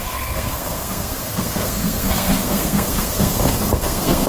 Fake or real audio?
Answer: fake